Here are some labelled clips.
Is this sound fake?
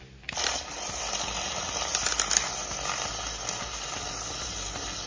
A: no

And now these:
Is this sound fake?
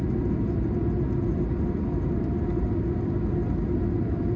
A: no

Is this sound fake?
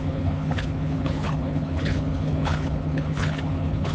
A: yes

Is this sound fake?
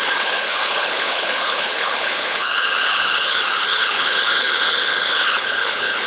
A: yes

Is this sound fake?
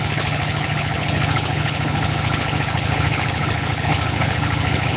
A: yes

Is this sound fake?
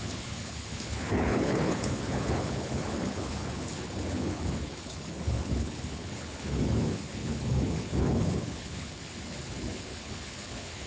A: yes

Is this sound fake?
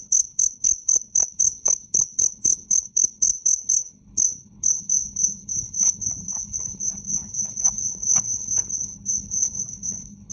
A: yes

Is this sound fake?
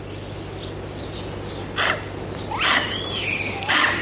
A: no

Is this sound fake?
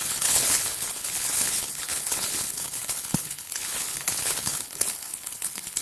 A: yes